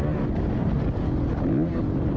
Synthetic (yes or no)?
no